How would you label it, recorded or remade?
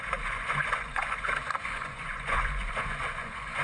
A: remade